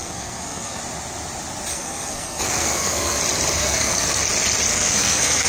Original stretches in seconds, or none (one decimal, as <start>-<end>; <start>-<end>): 0.8-1.7; 3.2-3.6; 4.2-4.7